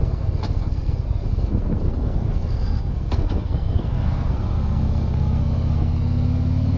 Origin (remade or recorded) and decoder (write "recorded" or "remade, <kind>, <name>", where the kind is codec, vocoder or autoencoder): remade, codec, SNAC